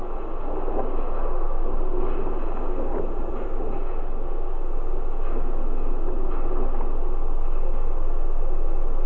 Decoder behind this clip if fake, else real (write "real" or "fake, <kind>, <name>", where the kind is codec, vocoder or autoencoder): real